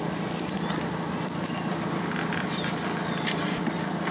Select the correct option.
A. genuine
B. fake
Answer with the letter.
A